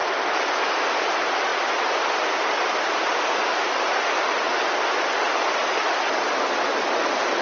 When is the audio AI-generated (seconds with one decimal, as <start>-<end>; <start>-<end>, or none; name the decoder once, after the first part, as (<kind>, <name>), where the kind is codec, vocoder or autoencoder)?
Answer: none